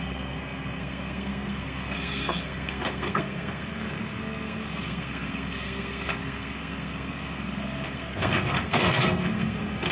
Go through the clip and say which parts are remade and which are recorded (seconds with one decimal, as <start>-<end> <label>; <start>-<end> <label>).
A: 0.0-9.9 remade